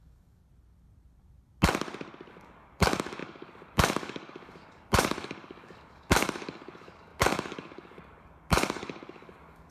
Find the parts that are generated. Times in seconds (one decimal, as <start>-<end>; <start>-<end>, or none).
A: 0.0-0.4; 2.3-9.7